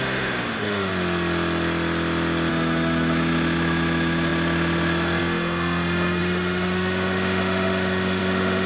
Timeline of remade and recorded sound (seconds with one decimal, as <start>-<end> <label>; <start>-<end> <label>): 0.0-0.9 remade; 0.9-2.5 recorded; 2.5-8.7 remade